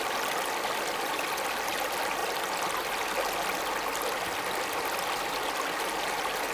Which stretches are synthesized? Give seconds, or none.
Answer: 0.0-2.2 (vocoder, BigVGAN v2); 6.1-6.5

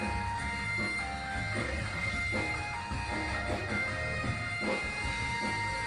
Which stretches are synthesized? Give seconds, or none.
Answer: 1.6-2.1 (codec, SNAC)

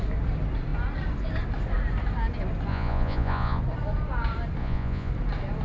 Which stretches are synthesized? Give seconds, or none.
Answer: 2.7-3.6 (vocoder, Vocos); 4.6-5.1

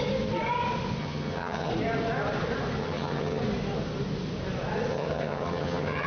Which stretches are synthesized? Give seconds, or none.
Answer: 1.0-1.7 (vocoder, HiFi-GAN); 2.8-3.4; 4.9-6.1

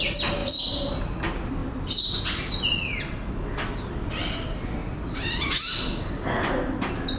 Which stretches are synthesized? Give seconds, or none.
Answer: 0.4-1.0 (vocoder, BigVGAN v2); 4.8-5.5

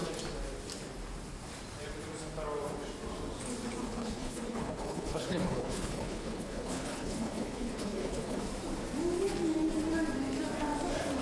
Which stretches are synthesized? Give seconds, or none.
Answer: 3.8-8.4 (codec, HILCodec)

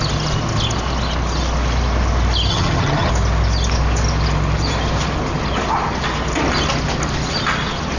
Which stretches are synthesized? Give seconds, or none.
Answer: 2.5-3.1 (vocoder, HiFi-GAN)